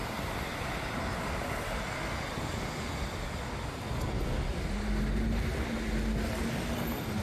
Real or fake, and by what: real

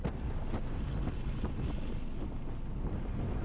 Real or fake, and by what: real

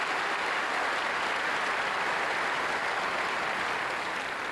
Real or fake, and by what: real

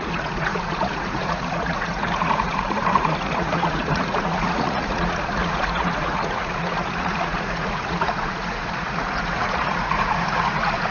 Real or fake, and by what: fake, vocoder, Vocos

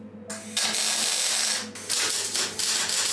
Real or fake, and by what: real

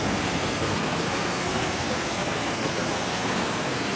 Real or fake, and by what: fake, codec, SNAC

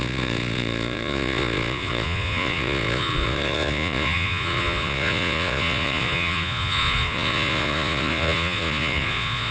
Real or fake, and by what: fake, vocoder, Vocos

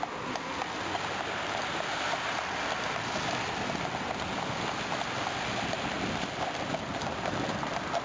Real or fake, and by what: real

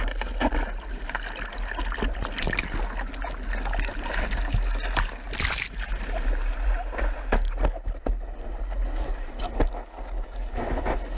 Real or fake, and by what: real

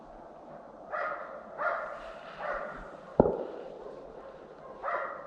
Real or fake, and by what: fake, vocoder, BigVGAN v2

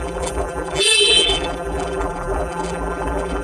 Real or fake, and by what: fake, vocoder, BigVGAN v2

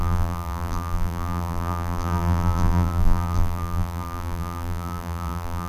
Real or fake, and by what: fake, vocoder, BigVGAN v2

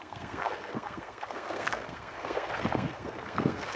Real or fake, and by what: fake, codec, SNAC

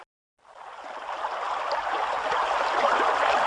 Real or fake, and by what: real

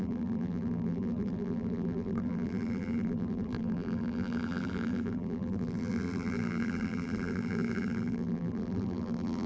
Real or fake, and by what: fake, vocoder, BigVGAN v2